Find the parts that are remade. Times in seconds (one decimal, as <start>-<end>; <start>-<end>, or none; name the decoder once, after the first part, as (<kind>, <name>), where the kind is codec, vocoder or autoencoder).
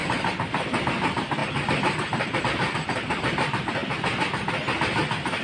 0.0-0.6 (vocoder, BigVGAN v2)